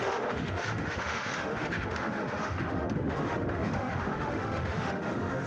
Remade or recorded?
remade